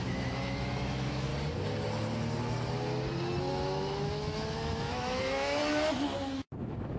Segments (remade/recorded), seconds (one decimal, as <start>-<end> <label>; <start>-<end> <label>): 0.0-1.3 remade; 1.3-3.5 recorded; 3.5-5.6 remade; 5.6-6.6 recorded; 6.6-7.0 remade